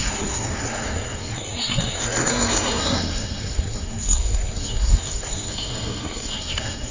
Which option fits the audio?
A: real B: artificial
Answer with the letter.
B